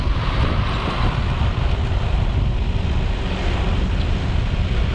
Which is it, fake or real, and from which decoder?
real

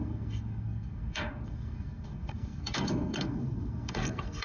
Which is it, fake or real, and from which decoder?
fake, codec, SNAC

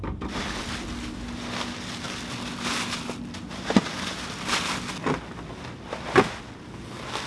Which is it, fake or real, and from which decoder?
real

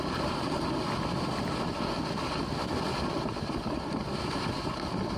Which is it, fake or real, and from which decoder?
real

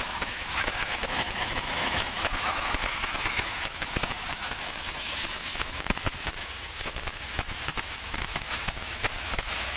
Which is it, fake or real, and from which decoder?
fake, autoencoder, DAC-VAE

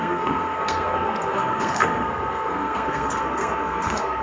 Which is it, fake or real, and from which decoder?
fake, codec, SNAC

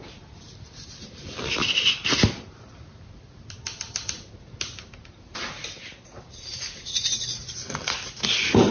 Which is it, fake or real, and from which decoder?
real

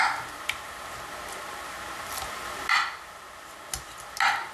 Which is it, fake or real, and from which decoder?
real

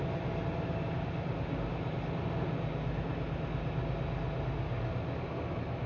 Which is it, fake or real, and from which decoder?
real